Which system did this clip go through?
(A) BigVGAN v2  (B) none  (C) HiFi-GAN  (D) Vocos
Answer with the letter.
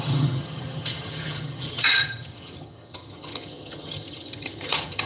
C